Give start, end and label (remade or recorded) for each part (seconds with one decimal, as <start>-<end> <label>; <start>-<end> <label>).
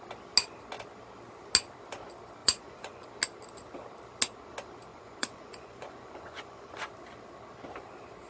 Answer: 0.0-2.4 recorded; 2.4-3.1 remade; 3.1-4.9 recorded; 4.9-6.9 remade; 6.9-8.3 recorded